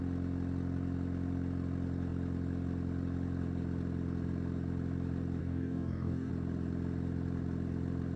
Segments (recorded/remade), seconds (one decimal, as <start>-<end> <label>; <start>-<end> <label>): 0.0-5.4 recorded; 5.4-6.3 remade; 6.3-8.2 recorded